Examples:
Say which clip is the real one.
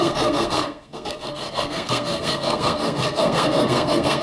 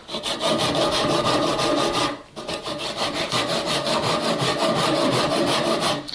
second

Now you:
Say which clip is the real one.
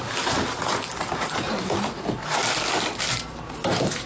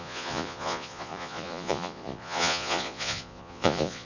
first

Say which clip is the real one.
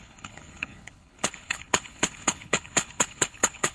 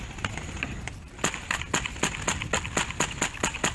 second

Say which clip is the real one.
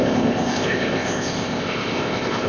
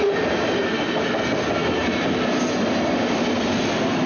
second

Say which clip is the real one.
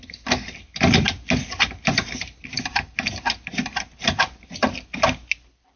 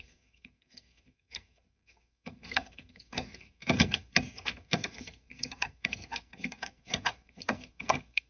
first